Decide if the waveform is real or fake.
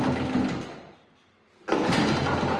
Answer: real